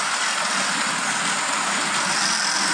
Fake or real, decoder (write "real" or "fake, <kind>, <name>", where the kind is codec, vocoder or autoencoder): real